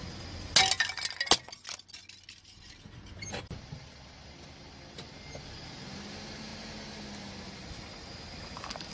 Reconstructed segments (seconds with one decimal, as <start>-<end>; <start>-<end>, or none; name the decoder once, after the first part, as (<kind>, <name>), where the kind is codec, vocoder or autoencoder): none